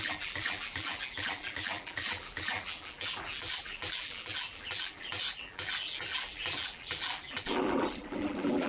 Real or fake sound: fake